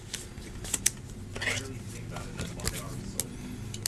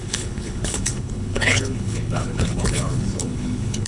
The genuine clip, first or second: first